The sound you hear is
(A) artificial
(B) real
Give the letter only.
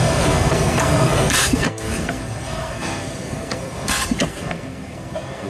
A